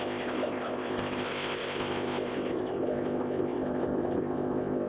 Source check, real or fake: fake